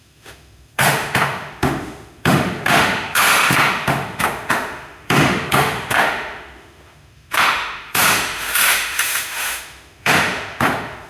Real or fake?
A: fake